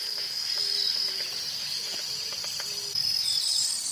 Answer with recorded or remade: recorded